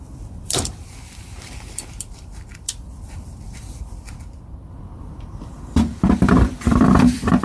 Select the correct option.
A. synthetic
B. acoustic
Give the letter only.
A